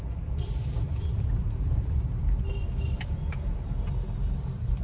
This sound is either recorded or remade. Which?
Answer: remade